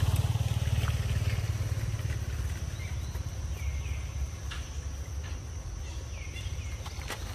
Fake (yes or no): no